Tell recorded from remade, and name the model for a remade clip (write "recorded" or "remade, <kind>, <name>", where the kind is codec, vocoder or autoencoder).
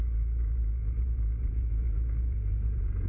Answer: remade, vocoder, Vocos